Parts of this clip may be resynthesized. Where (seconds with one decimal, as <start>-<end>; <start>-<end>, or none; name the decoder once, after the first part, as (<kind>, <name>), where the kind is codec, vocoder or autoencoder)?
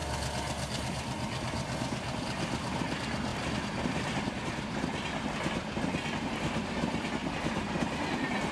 none